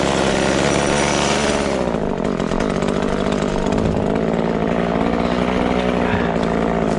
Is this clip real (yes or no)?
yes